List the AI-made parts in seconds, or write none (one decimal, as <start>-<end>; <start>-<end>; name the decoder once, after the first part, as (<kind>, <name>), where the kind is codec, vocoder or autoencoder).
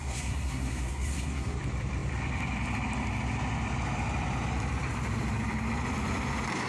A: 0.0-1.6 (codec, SNAC)